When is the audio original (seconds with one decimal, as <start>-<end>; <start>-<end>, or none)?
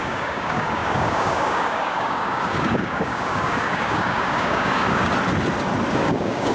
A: 5.1-5.9